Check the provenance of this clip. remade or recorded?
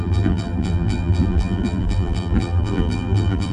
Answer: remade